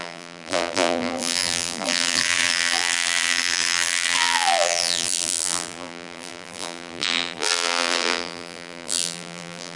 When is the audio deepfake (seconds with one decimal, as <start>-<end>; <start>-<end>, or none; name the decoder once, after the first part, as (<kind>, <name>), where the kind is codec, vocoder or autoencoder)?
0.0-9.8 (vocoder, BigVGAN v2)